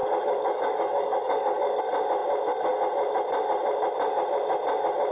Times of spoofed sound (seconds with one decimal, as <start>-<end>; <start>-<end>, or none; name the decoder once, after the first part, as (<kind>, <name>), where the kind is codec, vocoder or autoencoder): 0.0-1.8 (codec, DAC)